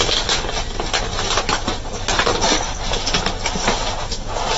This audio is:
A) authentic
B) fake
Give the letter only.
A